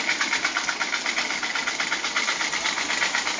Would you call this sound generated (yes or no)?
no